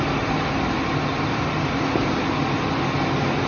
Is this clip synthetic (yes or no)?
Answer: no